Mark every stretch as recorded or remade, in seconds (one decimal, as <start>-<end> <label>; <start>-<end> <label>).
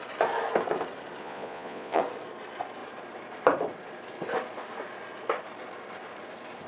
0.0-1.2 recorded; 1.2-2.0 remade; 2.0-6.7 recorded